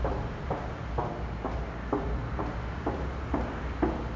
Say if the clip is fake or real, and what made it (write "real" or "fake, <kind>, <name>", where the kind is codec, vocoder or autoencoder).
real